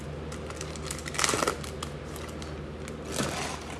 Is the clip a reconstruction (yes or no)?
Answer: no